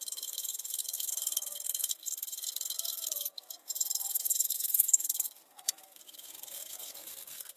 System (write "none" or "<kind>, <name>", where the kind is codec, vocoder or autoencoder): codec, SNAC